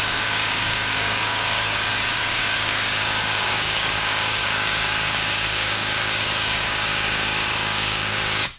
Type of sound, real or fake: fake